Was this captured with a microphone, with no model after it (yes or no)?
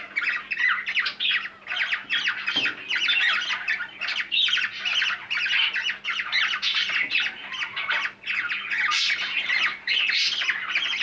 yes